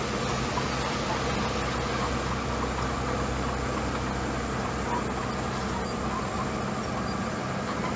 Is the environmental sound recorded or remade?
recorded